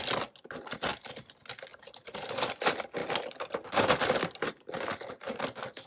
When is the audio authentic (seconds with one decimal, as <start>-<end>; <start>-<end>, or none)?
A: 0.0-1.7; 2.4-5.9